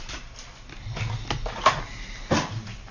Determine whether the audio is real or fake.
fake